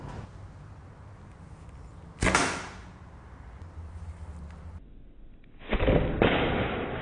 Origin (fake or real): real